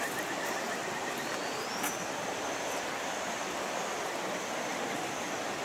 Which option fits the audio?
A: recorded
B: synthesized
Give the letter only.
A